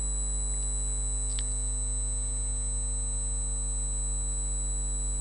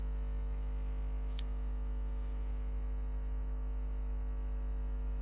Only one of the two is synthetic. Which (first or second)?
second